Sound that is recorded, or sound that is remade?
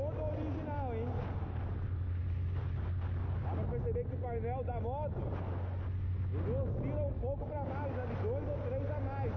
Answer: recorded